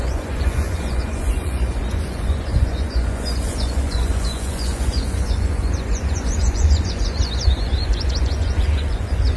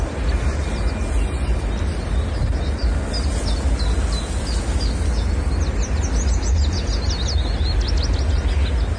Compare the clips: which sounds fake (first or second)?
first